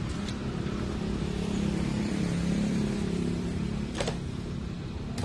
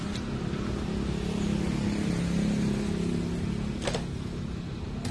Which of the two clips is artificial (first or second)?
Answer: first